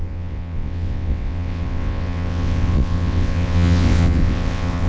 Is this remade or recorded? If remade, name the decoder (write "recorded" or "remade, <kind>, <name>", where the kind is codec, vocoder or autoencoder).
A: remade, vocoder, WaveNeXt